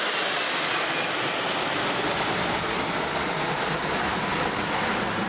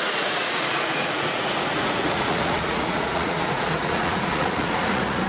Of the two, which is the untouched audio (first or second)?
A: first